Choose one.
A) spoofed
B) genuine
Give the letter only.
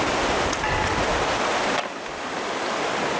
B